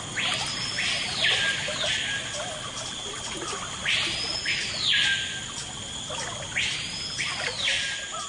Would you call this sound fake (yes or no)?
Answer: no